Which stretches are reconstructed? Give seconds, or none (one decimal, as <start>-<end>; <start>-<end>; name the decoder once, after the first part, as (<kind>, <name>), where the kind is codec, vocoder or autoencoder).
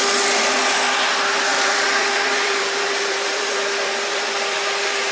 1.5-4.6 (vocoder, BigVGAN v2)